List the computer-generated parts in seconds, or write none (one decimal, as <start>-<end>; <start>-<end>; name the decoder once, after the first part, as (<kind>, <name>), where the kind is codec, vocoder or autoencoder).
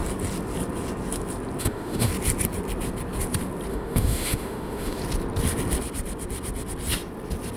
1.6-2.1 (autoencoder, DAC-VAE); 3.7-5.0